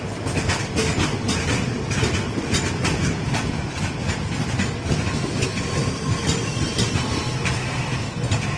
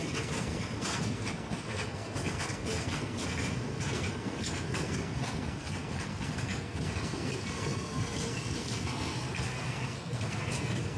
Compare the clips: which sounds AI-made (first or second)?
second